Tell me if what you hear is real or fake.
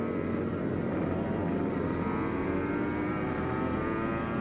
real